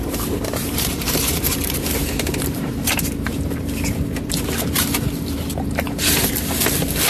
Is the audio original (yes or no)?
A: no